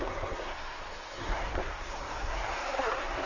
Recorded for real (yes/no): no